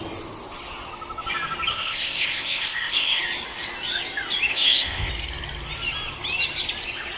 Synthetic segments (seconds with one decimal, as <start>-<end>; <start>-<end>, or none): 1.7-3.2; 4.5-5.1